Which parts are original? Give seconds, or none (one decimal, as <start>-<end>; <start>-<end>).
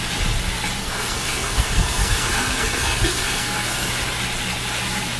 0.0-0.8; 3.9-5.2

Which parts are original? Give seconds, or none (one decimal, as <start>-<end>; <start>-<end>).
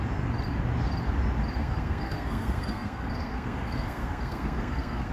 0.0-1.6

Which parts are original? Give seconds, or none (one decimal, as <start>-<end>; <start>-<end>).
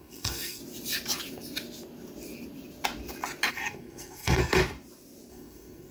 0.6-3.5; 4.6-5.3